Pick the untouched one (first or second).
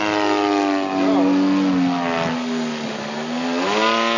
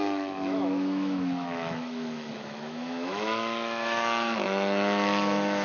first